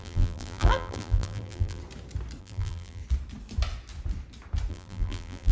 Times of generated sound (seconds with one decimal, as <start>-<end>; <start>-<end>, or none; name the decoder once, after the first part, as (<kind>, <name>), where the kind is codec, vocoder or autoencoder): 0.0-1.8 (vocoder, BigVGAN v2); 2.4-3.0; 4.7-5.5